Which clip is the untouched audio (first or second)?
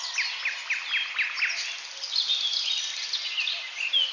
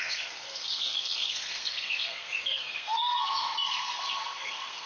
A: first